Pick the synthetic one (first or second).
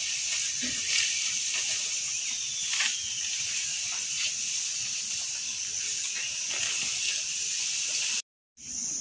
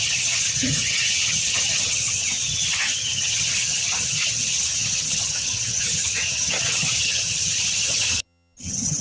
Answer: second